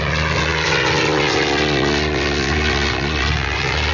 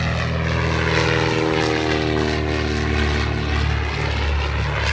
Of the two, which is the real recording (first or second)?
second